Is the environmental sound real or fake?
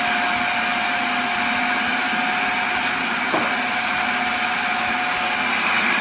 real